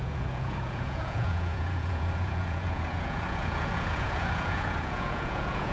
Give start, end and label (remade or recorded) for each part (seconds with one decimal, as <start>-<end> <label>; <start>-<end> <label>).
0.0-5.7 remade

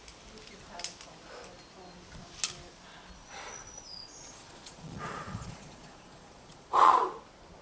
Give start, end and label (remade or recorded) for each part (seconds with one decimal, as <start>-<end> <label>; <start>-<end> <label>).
0.0-3.2 recorded; 3.2-7.0 remade; 7.0-7.6 recorded

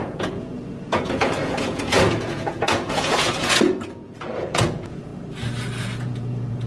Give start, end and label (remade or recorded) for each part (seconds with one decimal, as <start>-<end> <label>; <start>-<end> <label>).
0.0-5.1 remade; 5.1-5.8 recorded; 5.8-6.7 remade